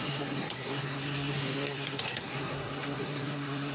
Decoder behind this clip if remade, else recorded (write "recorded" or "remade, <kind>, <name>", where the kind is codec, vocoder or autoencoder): remade, codec, SNAC